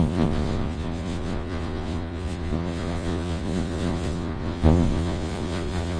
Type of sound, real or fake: fake